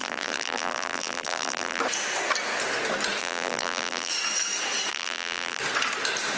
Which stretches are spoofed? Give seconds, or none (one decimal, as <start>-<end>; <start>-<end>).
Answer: 0.0-1.8; 3.2-4.1; 4.9-5.6